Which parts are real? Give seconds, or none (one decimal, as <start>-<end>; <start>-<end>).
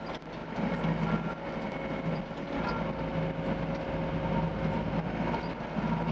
0.0-6.1